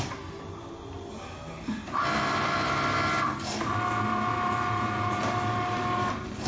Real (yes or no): yes